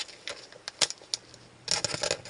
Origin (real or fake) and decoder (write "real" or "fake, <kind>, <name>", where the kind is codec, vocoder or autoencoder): real